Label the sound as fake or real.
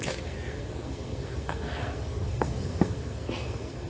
fake